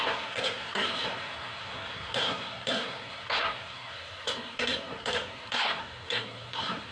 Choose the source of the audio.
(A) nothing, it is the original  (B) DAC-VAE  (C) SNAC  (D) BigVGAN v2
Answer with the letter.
C